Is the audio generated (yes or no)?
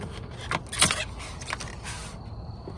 no